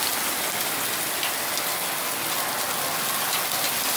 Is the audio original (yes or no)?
yes